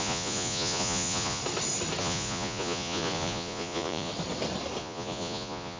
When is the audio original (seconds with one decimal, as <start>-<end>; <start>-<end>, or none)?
1.4-2.0; 4.1-4.8

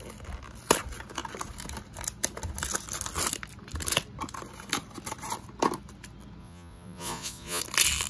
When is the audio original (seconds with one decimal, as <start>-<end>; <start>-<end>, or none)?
0.0-6.4; 7.6-8.1

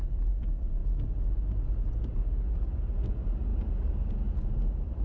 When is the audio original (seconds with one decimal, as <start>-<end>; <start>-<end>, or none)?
0.0-5.0

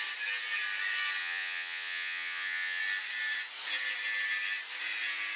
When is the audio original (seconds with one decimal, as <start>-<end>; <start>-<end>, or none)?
0.0-1.2; 2.8-5.4

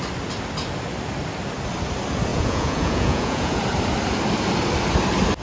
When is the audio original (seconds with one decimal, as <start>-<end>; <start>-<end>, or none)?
0.0-2.3; 3.6-5.4

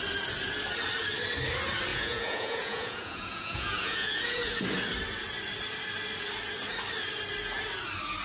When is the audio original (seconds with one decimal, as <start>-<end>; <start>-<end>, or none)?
0.0-1.9; 4.7-8.2

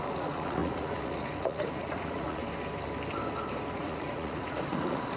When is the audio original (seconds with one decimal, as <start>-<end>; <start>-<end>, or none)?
2.4-3.7